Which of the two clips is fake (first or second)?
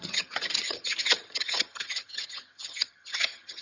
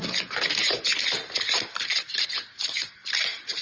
first